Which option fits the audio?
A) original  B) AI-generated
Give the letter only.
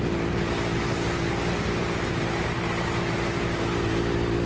A